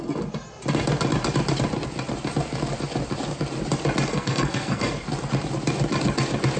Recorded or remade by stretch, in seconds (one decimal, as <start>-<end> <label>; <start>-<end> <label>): 0.0-4.1 recorded; 4.1-4.9 remade; 4.9-6.6 recorded